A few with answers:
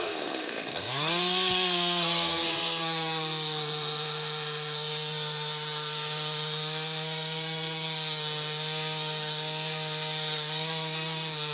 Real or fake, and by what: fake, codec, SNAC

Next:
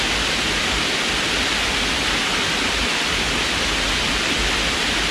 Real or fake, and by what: real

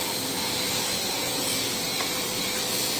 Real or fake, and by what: real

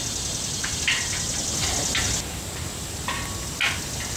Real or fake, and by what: real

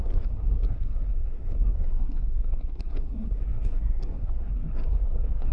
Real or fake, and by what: fake, codec, SNAC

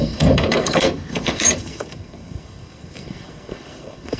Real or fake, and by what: fake, codec, SNAC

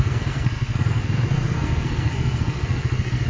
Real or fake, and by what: fake, codec, SNAC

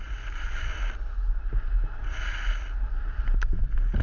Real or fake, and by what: real